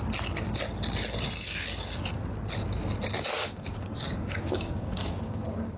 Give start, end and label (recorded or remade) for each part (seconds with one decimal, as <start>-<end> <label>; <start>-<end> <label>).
0.0-3.4 recorded; 3.4-5.8 remade